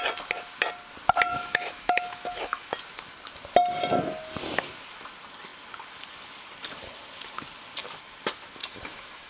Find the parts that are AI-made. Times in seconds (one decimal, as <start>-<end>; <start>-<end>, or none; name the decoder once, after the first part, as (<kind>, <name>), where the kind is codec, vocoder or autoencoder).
1.3-2.7 (autoencoder, DAC-VAE); 8.6-9.3